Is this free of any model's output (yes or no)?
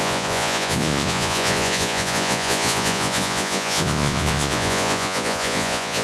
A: no